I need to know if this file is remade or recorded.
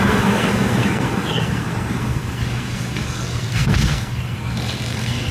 remade